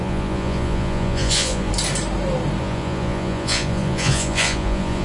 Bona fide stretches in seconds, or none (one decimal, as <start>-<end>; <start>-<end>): 1.7-2.6